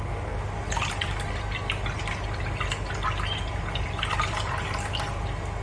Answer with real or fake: real